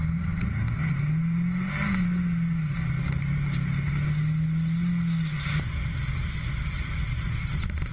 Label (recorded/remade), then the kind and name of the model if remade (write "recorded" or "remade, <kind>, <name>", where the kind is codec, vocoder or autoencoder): recorded